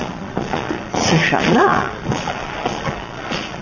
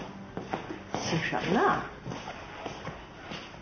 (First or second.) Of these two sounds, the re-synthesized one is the first